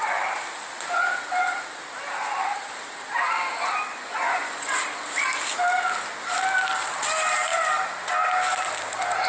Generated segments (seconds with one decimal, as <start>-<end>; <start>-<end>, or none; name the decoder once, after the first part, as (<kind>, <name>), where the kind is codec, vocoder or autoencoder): 3.9-4.8 (vocoder, Vocos)